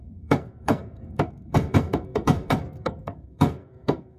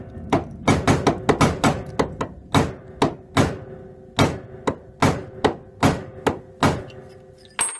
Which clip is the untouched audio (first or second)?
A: second